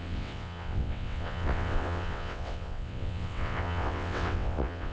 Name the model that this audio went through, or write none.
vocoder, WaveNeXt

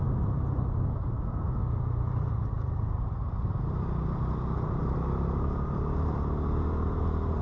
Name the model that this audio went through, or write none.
none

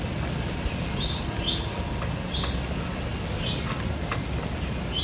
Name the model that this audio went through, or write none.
none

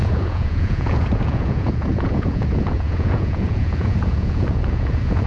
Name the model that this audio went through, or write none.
vocoder, Vocos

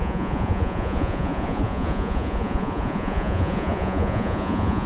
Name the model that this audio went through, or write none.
vocoder, Vocos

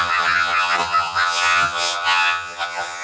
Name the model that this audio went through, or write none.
vocoder, HiFi-GAN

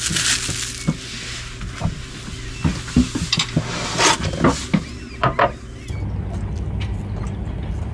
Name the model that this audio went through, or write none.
none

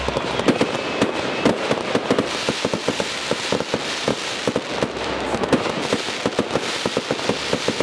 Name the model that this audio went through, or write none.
none